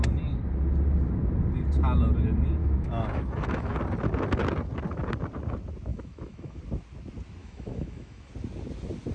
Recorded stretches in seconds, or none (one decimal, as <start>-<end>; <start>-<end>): 0.0-2.6; 3.8-5.9; 6.6-7.4; 8.3-9.1